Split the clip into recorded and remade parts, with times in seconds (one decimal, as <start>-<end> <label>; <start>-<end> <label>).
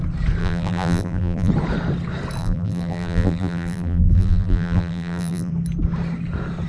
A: 0.0-0.4 recorded; 0.4-1.5 remade; 1.5-2.4 recorded; 2.4-5.5 remade; 5.5-6.7 recorded